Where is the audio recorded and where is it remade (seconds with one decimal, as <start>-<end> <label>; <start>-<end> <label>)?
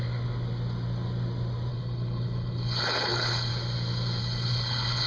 0.0-1.7 recorded; 1.7-3.5 remade; 3.5-4.2 recorded; 4.2-5.1 remade